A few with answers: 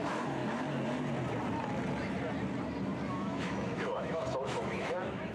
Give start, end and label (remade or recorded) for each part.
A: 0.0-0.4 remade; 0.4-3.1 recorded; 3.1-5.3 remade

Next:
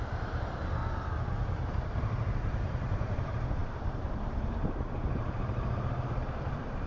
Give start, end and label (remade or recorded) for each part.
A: 0.0-0.8 remade; 0.8-1.7 recorded; 1.7-6.9 remade

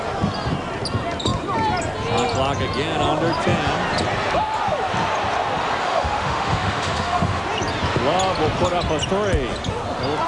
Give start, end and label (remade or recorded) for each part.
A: 0.0-5.8 recorded; 5.8-7.4 remade; 7.4-10.3 recorded

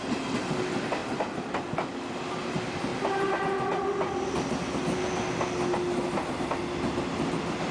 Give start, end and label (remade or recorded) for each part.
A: 0.0-7.7 recorded

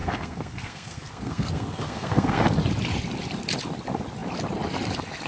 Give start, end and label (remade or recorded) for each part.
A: 0.0-2.5 remade; 2.5-5.3 recorded

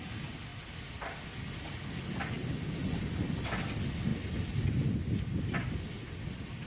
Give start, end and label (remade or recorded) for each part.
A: 0.0-6.7 recorded